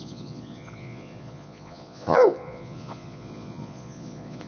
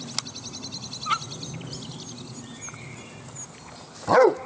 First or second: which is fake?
first